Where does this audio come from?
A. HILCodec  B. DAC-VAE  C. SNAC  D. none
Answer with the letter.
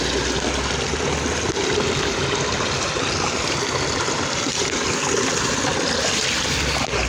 D